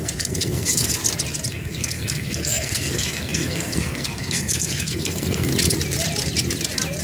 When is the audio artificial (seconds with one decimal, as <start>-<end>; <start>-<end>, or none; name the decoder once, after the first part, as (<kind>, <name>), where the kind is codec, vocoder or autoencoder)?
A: 0.0-1.0 (codec, SNAC); 1.5-5.5